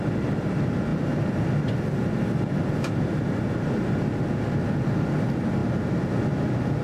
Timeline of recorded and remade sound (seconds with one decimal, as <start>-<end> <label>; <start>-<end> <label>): 0.0-6.8 recorded